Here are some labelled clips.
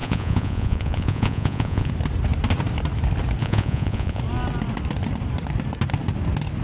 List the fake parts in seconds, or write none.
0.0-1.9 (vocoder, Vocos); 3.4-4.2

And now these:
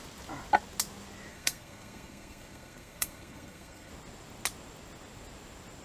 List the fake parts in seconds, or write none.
1.3-3.9 (codec, SNAC)

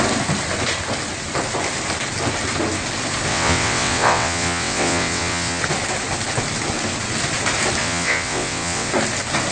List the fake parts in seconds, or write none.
3.3-5.6 (vocoder, WaveNeXt); 7.8-8.9